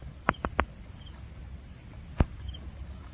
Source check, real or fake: real